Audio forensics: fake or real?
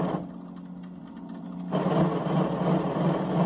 real